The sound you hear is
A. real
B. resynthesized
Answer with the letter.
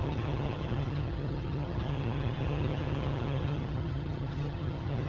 B